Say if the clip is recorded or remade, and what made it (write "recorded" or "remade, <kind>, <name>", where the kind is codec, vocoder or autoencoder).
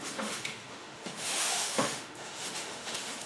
remade, autoencoder, DAC-VAE